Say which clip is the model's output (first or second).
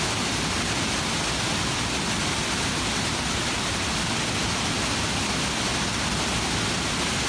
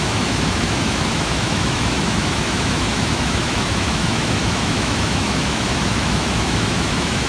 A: second